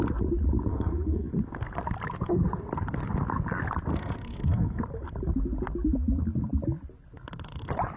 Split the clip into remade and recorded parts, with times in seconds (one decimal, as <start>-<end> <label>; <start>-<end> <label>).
0.0-0.7 recorded; 0.7-1.3 remade; 1.3-3.9 recorded; 3.9-4.8 remade; 4.8-8.0 recorded